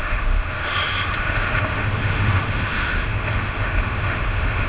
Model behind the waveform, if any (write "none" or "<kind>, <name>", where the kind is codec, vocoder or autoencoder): autoencoder, DAC-VAE